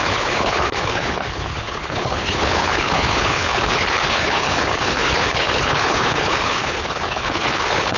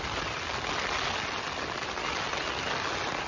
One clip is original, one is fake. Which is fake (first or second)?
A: first